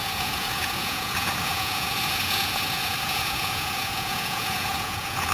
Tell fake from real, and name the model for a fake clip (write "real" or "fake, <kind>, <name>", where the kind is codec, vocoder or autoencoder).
fake, vocoder, Vocos